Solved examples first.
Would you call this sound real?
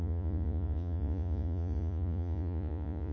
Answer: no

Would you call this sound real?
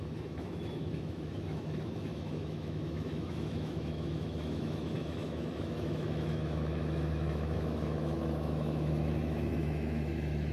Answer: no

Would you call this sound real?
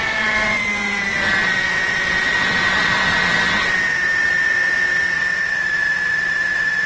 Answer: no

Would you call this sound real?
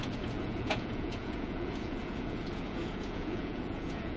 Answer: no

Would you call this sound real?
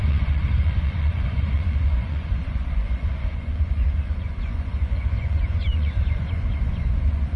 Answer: no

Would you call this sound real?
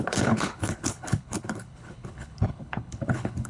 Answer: no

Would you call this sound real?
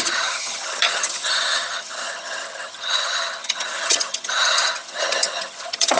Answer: no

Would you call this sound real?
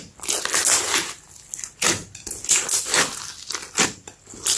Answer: yes